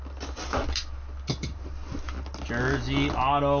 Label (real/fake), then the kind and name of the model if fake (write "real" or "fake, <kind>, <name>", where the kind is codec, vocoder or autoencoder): real